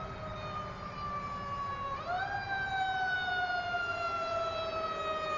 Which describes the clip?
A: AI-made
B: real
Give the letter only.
B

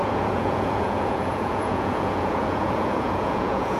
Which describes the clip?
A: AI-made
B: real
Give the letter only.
A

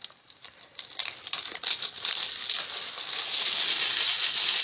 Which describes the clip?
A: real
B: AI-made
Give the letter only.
A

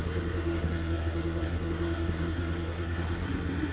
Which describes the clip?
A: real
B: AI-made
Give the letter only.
B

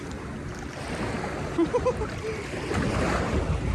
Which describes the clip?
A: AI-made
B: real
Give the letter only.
B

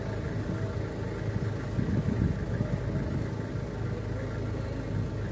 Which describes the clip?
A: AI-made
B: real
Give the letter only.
B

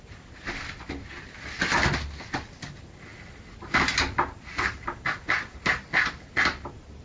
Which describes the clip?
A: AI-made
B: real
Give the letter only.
B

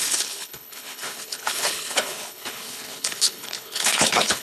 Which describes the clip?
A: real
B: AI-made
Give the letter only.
B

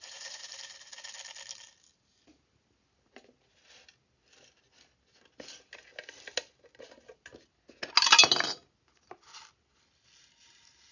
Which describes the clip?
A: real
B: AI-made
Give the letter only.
A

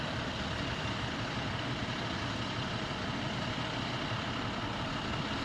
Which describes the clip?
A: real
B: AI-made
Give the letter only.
B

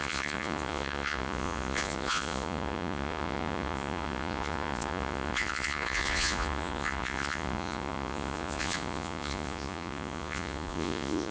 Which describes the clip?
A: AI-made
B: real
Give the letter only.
A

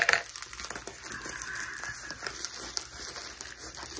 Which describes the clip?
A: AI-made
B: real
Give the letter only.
B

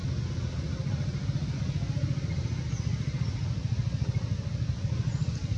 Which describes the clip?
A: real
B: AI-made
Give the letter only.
A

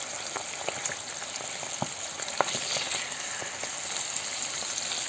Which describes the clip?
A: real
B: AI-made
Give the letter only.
A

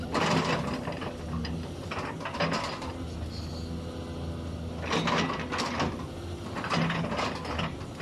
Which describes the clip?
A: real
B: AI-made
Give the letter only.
A